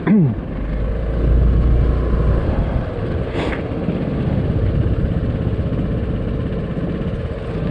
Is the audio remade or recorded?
recorded